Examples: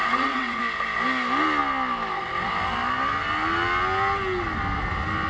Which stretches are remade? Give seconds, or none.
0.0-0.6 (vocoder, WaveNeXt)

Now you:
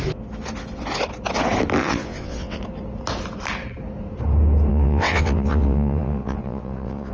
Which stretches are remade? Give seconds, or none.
1.8-2.6 (vocoder, WaveNeXt); 4.7-7.1

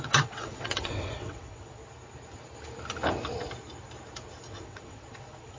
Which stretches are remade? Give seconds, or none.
0.0-1.8 (vocoder, WaveNeXt); 4.5-5.6

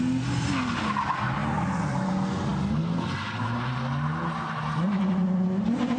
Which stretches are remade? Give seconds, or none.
none

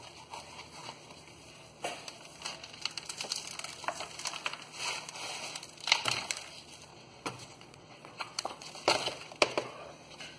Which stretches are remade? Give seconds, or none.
6.9-8.7 (vocoder, WaveNeXt)

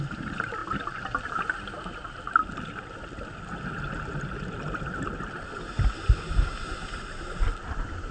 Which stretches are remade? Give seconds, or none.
none